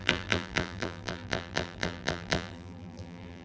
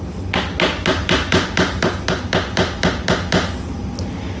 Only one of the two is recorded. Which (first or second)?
second